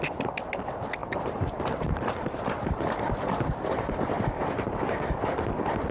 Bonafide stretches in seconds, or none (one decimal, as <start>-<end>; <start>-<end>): 0.0-1.0; 3.9-5.9